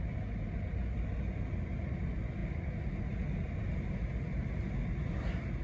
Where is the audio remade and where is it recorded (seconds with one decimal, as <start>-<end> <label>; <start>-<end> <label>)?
0.0-5.6 recorded